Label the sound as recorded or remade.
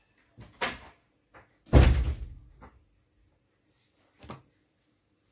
recorded